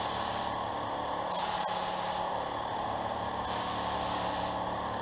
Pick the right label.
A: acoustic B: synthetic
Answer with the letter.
A